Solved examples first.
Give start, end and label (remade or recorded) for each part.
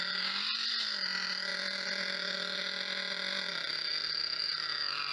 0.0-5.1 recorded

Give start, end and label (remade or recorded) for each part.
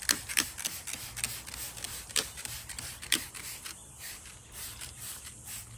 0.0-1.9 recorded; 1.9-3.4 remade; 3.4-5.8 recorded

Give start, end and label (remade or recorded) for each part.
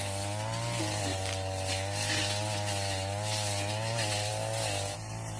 0.0-5.4 recorded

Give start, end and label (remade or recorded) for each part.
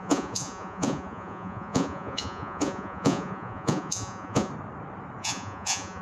0.0-4.5 remade; 4.5-5.2 recorded; 5.2-6.0 remade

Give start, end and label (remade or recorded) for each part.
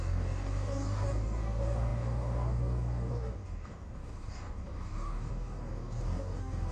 0.0-6.7 remade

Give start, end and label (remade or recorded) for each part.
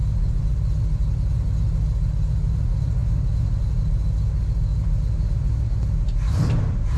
0.0-7.0 recorded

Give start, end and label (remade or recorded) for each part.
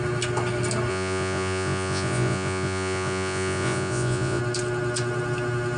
0.0-0.9 recorded; 0.9-4.4 remade; 4.4-5.8 recorded